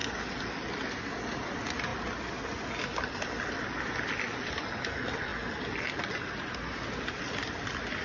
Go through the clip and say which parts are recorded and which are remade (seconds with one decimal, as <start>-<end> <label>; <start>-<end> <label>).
0.0-0.9 recorded; 0.9-1.9 remade; 1.9-2.8 recorded; 2.8-5.3 remade; 5.3-7.0 recorded; 7.0-8.0 remade